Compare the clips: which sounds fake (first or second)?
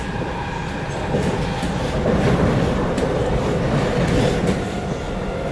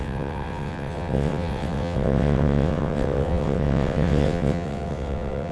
second